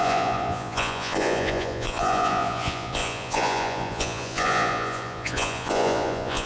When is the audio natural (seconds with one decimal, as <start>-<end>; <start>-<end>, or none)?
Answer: none